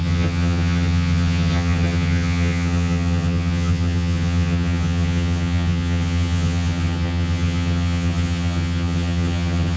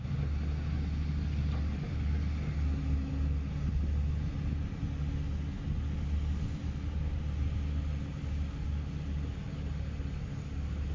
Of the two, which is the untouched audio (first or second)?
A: second